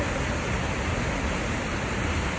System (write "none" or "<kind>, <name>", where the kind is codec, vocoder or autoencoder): none